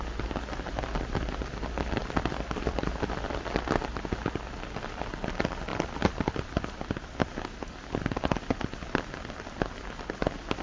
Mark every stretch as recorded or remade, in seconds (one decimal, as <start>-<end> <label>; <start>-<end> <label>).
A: 0.0-10.6 recorded